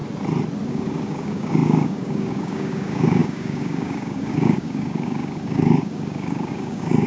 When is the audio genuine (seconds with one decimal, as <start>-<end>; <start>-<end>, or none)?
0.0-0.7